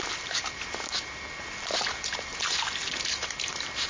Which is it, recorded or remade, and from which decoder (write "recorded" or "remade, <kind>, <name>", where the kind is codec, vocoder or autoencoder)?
recorded